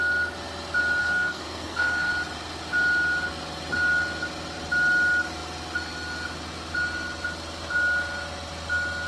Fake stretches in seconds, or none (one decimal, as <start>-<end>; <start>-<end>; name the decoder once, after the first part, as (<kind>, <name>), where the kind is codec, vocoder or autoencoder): 1.0-2.1 (codec, SNAC)